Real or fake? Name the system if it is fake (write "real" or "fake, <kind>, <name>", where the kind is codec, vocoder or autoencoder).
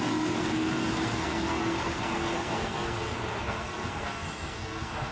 fake, codec, SNAC